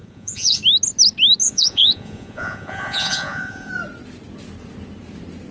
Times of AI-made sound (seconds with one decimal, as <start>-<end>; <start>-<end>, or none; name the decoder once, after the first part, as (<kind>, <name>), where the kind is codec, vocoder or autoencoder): 0.0-0.6 (vocoder, Vocos); 1.4-3.7